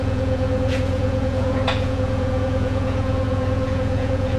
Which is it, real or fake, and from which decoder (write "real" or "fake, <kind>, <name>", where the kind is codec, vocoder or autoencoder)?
fake, vocoder, Vocos